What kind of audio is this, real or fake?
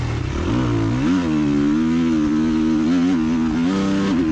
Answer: real